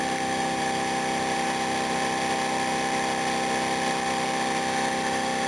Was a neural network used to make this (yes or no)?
no